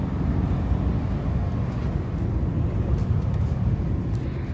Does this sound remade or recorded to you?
recorded